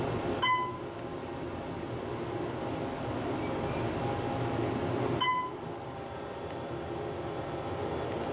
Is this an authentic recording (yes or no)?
yes